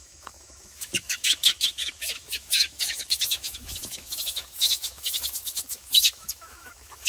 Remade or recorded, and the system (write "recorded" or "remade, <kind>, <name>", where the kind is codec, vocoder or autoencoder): remade, autoencoder, DAC-VAE